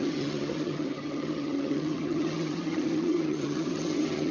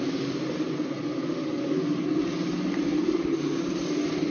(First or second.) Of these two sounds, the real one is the second